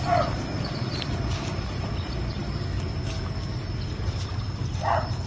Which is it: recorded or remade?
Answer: recorded